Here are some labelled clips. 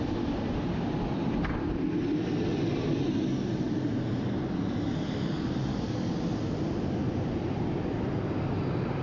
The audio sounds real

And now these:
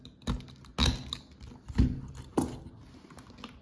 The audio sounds real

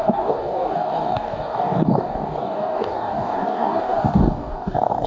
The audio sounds fake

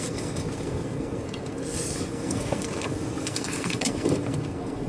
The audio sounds fake